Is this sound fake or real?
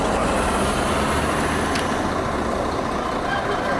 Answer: real